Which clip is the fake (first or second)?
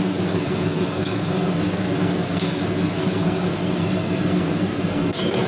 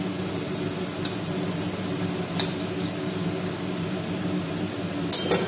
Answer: first